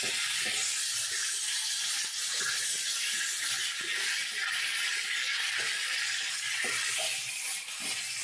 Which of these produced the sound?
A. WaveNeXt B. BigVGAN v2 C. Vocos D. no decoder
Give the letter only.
D